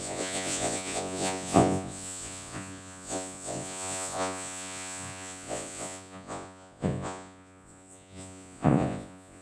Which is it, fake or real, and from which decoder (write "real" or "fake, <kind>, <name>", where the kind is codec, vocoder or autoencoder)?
fake, vocoder, Vocos